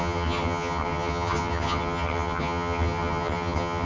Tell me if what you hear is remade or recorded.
remade